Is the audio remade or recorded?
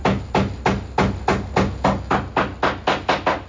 recorded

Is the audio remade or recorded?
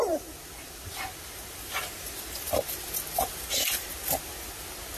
recorded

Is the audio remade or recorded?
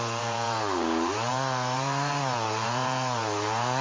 remade